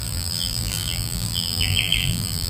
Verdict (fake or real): fake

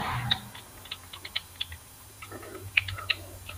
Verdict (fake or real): real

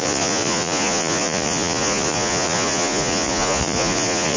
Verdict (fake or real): fake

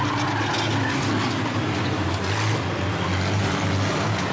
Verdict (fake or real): real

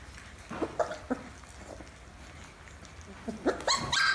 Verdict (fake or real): real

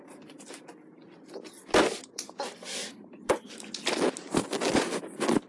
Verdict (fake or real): real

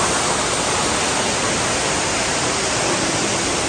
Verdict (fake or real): real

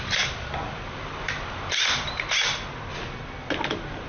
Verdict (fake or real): real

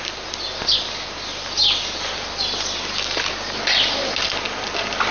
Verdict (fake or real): real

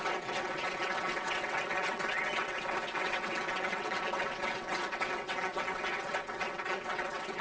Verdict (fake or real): fake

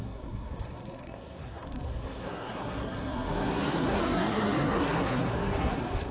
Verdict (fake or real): fake